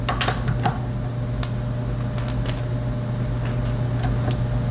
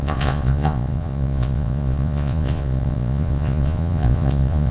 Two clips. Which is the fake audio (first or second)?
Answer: second